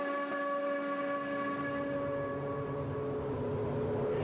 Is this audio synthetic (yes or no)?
no